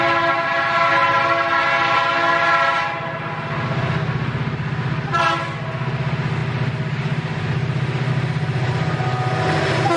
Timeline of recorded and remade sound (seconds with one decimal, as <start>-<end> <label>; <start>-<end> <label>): 0.0-10.0 recorded